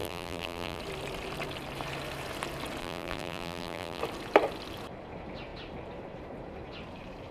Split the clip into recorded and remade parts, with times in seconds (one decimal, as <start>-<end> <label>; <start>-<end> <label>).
0.0-0.8 remade; 0.8-2.8 recorded; 2.8-4.0 remade; 4.0-7.3 recorded